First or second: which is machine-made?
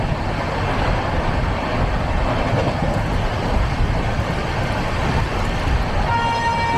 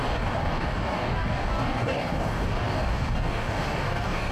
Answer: second